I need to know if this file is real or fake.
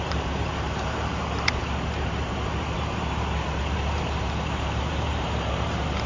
fake